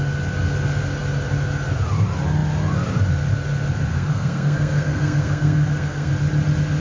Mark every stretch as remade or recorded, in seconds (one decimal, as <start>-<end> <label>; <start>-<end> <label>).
0.0-3.9 recorded; 3.9-6.1 remade; 6.1-6.8 recorded